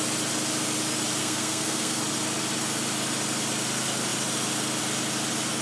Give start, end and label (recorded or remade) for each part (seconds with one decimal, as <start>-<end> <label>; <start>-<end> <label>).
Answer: 0.0-1.2 recorded; 1.2-2.0 remade; 2.0-5.6 recorded